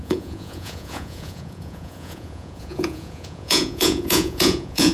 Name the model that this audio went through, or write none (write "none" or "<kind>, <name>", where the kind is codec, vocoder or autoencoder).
vocoder, Vocos